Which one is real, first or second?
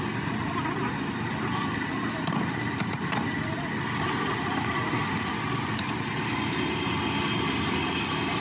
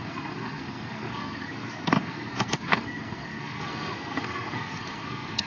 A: first